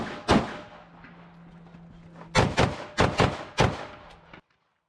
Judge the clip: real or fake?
real